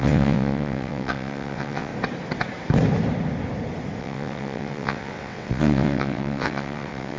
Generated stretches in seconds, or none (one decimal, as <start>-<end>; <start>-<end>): 0.0-1.9; 4.0-7.2